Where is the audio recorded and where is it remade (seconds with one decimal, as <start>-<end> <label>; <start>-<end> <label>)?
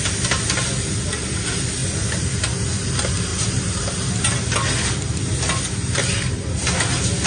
0.0-7.3 recorded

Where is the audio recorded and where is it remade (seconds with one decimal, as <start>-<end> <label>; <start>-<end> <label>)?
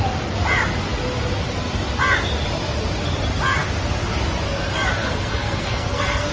0.0-5.0 recorded; 5.0-6.3 remade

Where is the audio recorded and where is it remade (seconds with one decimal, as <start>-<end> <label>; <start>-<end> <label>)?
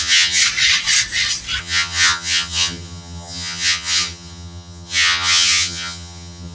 0.0-0.4 remade; 0.4-1.6 recorded; 1.6-6.5 remade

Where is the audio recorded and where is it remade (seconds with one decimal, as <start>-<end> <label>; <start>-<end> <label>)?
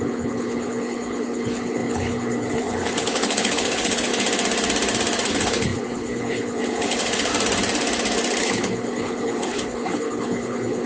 0.0-4.1 remade; 4.1-5.3 recorded; 5.3-7.3 remade; 7.3-8.4 recorded; 8.4-10.9 remade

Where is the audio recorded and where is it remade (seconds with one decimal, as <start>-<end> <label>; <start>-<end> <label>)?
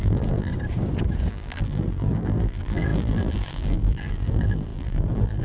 0.0-0.5 remade; 0.5-1.3 recorded; 1.3-5.4 remade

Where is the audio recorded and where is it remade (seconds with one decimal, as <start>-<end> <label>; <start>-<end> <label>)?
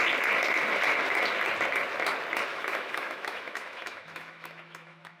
0.0-2.5 recorded; 2.5-5.2 remade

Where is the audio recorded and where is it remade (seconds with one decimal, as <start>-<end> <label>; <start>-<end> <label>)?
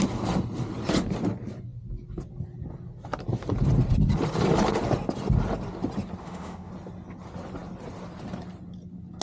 0.0-6.2 recorded; 6.2-6.7 remade; 6.7-9.2 recorded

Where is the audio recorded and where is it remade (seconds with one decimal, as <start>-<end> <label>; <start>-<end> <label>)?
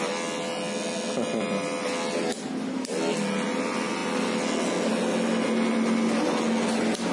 0.0-7.1 recorded